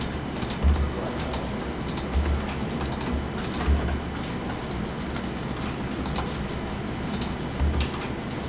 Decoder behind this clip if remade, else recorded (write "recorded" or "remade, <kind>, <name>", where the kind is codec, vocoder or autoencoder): recorded